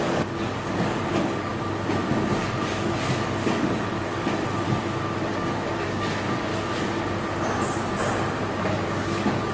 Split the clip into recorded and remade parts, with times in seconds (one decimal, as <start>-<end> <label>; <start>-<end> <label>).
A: 0.0-1.5 remade; 1.5-2.4 recorded; 2.4-4.4 remade; 4.4-5.2 recorded; 5.2-6.5 remade; 6.5-8.6 recorded; 8.6-9.5 remade